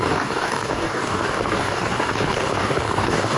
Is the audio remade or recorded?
remade